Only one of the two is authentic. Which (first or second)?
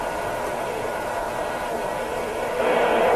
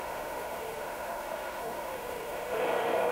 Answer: first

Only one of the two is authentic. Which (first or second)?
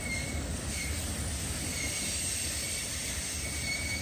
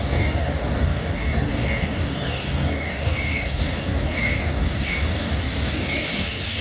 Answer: first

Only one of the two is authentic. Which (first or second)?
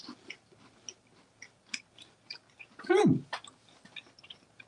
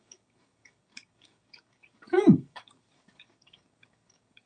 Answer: first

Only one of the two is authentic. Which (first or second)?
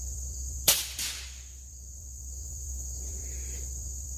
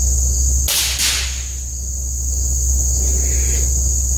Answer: second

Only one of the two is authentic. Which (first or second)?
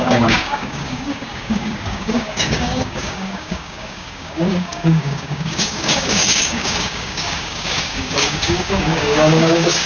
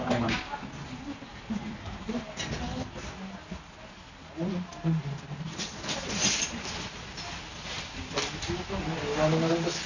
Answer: second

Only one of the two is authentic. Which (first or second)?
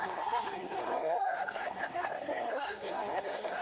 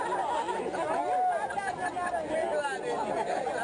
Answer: second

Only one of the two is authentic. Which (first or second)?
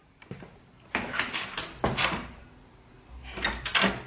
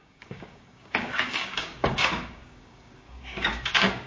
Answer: first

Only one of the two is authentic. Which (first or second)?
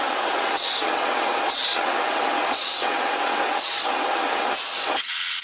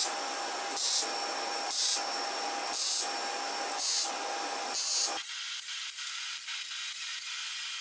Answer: second